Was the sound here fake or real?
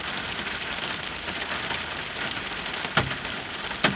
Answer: real